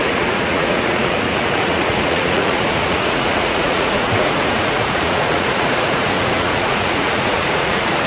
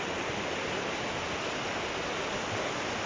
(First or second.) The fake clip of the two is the first